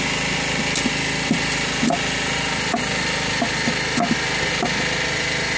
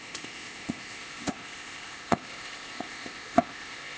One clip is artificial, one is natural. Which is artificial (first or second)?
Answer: second